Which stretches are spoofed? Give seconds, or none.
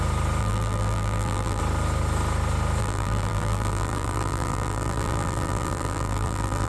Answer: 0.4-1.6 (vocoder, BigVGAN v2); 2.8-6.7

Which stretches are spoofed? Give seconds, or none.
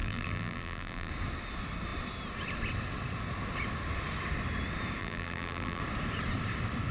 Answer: 0.0-1.1 (vocoder, BigVGAN v2); 5.0-5.8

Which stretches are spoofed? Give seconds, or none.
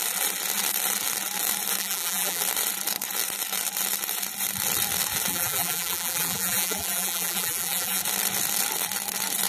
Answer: 1.8-2.4 (vocoder, BigVGAN v2); 5.3-8.0